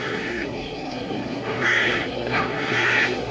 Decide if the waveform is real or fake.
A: fake